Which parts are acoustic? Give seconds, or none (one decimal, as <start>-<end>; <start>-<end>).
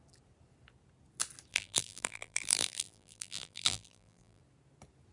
0.0-1.5; 4.4-5.1